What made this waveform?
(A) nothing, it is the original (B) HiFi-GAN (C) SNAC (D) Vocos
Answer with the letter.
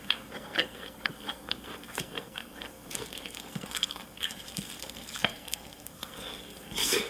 C